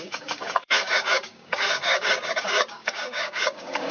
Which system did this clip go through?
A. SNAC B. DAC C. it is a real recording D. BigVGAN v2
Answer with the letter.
B